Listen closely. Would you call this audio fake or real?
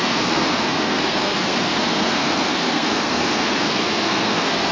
fake